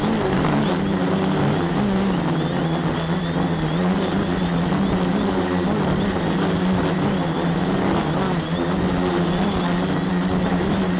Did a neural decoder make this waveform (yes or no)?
no